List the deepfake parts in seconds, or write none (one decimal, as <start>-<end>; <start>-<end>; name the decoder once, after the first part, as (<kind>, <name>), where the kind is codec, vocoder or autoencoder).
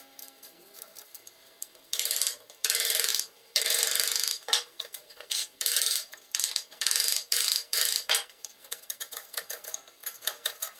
0.0-10.8 (codec, SNAC)